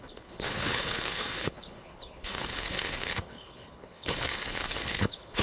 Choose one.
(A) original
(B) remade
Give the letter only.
B